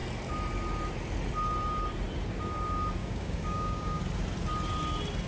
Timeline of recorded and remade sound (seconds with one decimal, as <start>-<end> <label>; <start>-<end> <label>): 0.0-3.0 recorded; 3.0-4.0 remade; 4.0-5.3 recorded